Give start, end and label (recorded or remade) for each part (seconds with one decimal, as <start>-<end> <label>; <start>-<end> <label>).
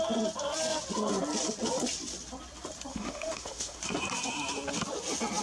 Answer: 0.0-2.9 recorded; 2.9-3.8 remade; 3.8-5.4 recorded